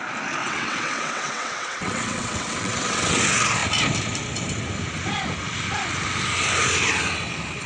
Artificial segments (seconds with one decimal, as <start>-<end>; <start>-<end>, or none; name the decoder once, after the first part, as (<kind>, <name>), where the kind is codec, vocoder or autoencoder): 0.4-3.2 (vocoder, WaveNeXt)